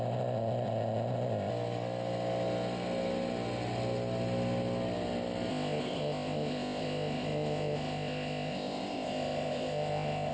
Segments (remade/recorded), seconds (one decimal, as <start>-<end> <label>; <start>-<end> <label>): 0.0-1.5 remade; 1.5-5.5 recorded; 5.5-10.3 remade